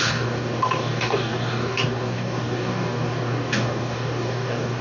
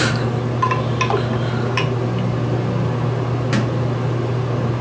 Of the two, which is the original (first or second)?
second